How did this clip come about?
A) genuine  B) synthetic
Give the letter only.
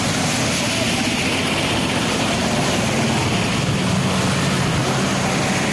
A